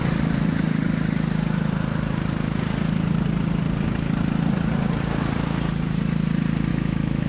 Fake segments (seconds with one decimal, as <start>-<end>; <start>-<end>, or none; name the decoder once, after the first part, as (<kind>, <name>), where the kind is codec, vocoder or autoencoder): 6.7-7.3 (autoencoder, DAC-VAE)